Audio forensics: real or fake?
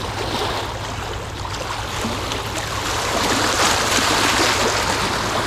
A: real